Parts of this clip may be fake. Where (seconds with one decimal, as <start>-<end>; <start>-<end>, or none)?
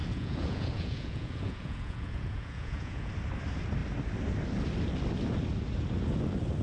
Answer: 0.0-3.1